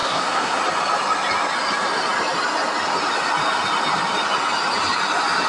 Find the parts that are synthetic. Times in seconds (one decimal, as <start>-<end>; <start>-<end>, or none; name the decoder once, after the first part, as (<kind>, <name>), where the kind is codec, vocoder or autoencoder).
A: 0.0-0.6 (codec, SNAC)